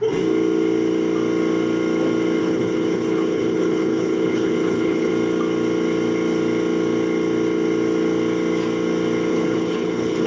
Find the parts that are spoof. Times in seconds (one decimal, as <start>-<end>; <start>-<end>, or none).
2.4-5.1; 9.3-10.3